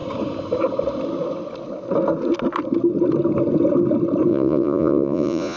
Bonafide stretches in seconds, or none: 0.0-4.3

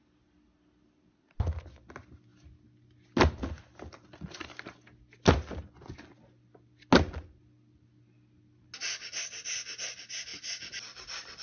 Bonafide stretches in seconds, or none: 0.0-11.4